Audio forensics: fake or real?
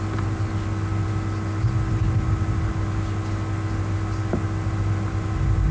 real